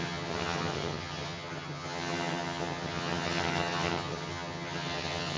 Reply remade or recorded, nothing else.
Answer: remade